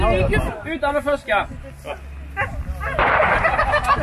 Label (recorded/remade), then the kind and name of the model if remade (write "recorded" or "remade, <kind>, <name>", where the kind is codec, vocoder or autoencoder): recorded